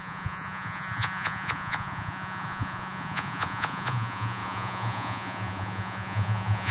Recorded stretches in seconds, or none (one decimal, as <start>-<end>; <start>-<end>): none